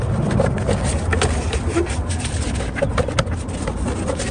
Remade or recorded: recorded